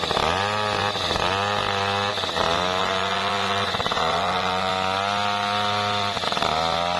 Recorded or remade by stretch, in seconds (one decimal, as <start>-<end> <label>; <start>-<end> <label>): 0.0-2.8 recorded; 2.8-4.7 remade; 4.7-7.0 recorded